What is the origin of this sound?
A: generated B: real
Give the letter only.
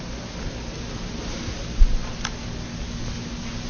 B